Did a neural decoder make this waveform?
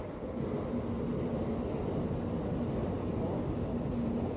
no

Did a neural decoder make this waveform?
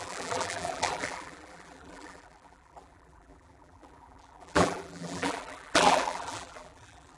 yes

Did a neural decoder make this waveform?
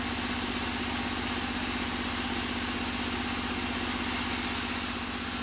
no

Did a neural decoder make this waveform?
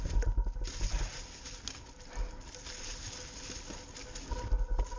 no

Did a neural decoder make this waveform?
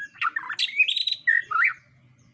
no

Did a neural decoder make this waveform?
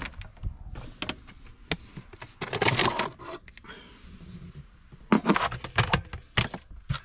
no